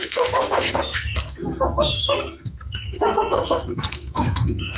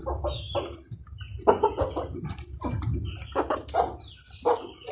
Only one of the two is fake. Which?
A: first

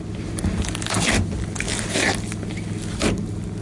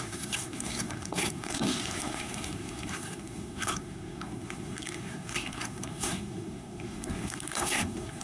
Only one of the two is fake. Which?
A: second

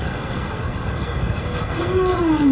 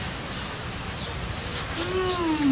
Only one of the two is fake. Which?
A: first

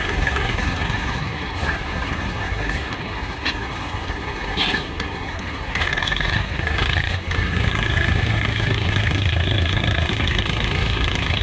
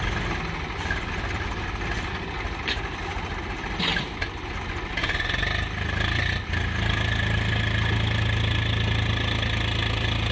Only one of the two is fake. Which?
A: first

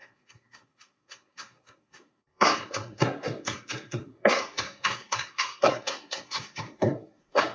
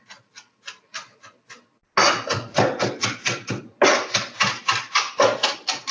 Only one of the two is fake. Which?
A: first